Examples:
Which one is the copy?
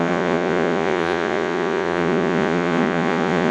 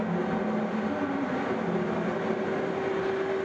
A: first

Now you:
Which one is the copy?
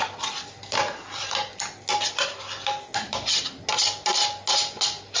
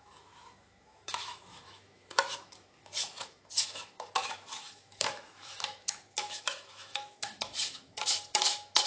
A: second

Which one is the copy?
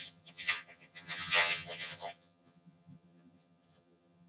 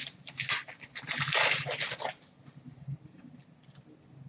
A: first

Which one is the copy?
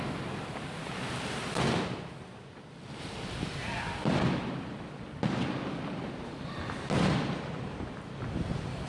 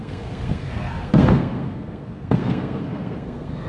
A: second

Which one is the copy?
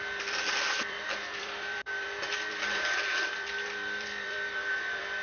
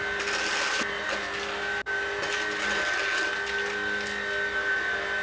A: first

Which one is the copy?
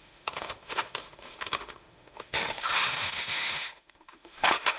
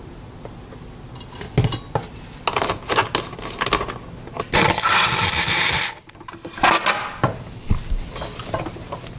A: first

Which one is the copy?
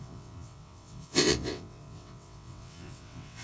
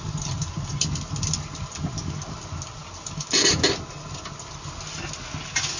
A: first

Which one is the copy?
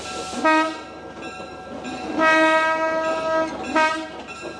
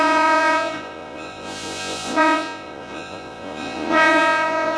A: second